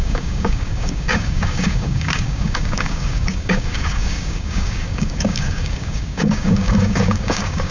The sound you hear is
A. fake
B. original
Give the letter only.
A